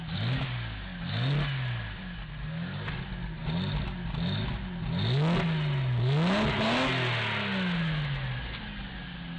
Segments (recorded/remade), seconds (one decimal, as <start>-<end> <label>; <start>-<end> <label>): 0.0-9.4 recorded